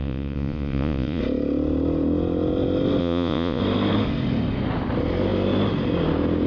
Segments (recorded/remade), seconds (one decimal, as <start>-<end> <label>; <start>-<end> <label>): 0.0-1.2 remade; 1.2-3.0 recorded; 3.0-3.6 remade; 3.6-6.5 recorded